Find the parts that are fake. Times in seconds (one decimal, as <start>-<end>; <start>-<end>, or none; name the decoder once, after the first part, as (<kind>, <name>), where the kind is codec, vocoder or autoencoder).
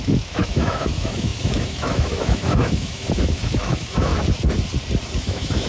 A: 0.0-4.1 (autoencoder, DAC-VAE); 5.2-5.7